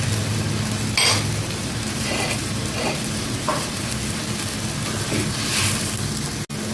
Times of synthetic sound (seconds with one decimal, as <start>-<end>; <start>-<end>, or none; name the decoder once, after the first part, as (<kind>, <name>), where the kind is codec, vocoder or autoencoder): 1.6-3.9 (vocoder, BigVGAN v2)